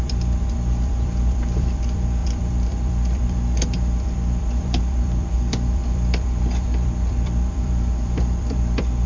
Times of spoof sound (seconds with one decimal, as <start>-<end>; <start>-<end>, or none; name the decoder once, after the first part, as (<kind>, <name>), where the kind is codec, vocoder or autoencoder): 0.0-9.1 (vocoder, BigVGAN v2)